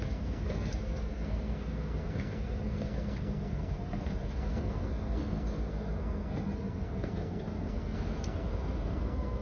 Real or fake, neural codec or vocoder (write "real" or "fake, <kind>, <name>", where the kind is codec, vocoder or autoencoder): fake, codec, SNAC